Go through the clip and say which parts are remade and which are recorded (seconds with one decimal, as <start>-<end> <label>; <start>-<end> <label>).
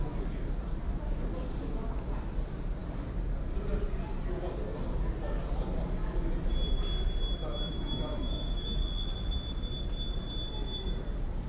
0.0-7.4 recorded; 7.4-8.8 remade; 8.8-11.5 recorded